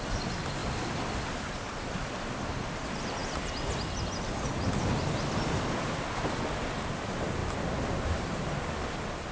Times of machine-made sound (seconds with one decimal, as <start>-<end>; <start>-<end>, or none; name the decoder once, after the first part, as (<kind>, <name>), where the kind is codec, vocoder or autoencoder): none